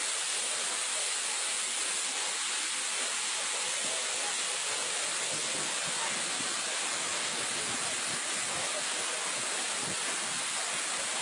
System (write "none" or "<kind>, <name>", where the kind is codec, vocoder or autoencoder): none